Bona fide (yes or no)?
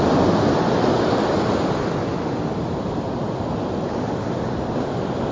yes